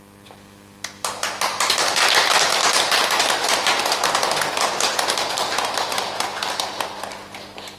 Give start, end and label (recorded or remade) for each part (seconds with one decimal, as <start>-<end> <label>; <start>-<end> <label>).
0.0-7.8 recorded